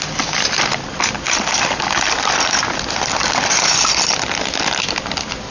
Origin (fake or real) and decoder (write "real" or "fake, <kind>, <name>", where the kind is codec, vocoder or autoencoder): real